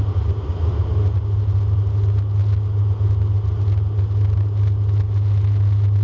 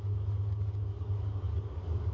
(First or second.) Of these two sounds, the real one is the first